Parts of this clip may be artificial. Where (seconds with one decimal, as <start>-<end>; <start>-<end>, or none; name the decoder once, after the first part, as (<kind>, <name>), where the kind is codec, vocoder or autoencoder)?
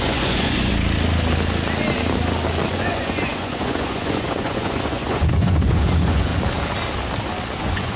0.0-0.7 (vocoder, Vocos); 2.7-6.3; 7.6-8.0